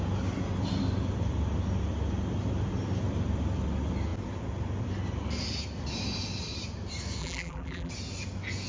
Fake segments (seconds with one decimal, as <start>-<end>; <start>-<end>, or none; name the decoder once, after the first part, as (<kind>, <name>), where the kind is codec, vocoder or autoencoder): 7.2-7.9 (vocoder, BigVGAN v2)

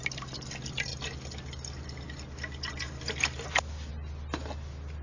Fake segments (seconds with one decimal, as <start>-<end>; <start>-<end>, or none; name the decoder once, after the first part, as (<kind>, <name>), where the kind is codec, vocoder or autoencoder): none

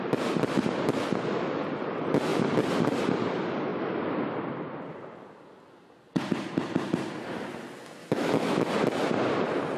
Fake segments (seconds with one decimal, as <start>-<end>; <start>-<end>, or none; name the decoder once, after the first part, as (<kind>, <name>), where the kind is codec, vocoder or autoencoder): 8.0-8.7 (autoencoder, DAC-VAE)

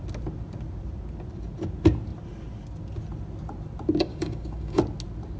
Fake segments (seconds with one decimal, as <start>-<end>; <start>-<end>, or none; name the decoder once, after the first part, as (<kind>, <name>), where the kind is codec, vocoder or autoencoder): 4.1-4.8 (codec, DAC)

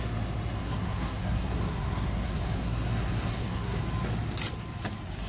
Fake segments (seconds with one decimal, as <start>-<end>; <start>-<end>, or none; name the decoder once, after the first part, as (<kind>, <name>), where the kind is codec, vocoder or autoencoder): 0.6-3.8 (codec, SNAC)

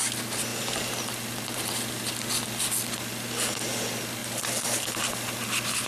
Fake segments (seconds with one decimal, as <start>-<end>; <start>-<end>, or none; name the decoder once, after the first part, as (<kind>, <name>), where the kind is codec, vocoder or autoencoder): none

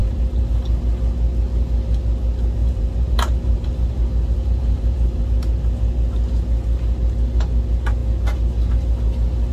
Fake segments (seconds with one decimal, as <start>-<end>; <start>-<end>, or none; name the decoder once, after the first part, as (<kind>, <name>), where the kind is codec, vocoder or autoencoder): 0.0-0.5 (vocoder, BigVGAN v2); 2.6-5.3

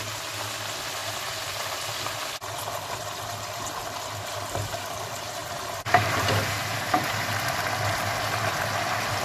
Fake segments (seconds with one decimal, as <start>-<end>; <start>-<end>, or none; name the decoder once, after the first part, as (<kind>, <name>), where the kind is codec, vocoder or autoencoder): 1.0-1.9 (vocoder, BigVGAN v2); 5.4-7.5